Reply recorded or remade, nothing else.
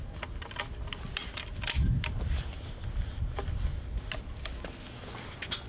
recorded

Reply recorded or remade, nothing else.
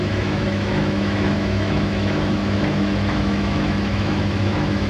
remade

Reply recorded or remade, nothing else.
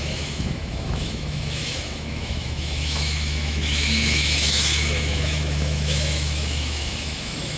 remade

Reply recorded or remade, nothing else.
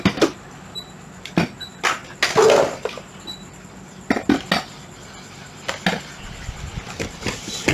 recorded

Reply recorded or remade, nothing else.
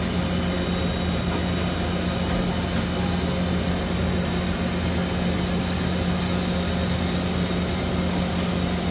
recorded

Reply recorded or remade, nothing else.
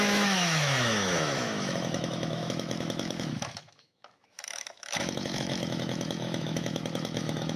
remade